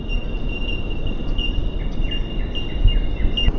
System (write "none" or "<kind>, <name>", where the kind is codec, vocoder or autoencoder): none